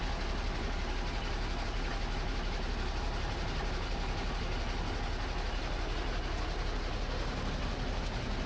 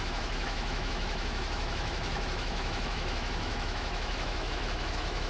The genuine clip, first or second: first